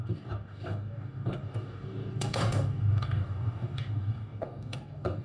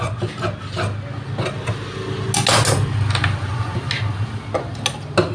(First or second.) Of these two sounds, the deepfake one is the first